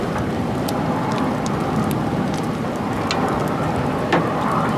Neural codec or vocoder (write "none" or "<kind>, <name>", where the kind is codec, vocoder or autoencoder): none